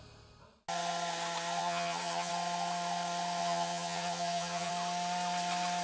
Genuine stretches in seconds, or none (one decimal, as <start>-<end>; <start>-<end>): 0.0-1.6; 2.3-3.4; 4.7-5.8